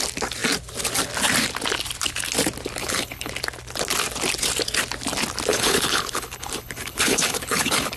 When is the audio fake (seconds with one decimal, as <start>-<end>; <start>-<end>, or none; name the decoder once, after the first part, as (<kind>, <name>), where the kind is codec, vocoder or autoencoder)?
2.8-3.3 (codec, HILCodec); 5.5-8.0

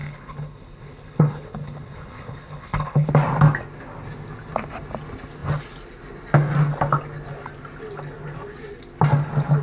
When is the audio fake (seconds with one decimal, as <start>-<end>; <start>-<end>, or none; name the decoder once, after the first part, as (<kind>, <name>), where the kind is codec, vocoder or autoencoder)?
0.0-3.1 (codec, HILCodec)